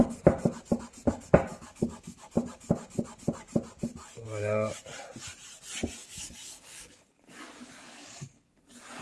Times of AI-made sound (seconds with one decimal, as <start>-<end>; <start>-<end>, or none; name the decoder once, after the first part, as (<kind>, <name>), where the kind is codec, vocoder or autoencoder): 1.5-2.3 (codec, DAC); 6.0-8.6